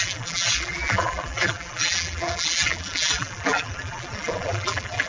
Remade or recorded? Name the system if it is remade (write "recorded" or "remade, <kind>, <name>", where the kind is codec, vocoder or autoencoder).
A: remade, vocoder, BigVGAN v2